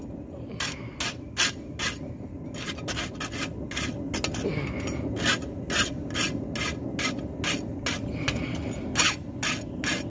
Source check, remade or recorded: recorded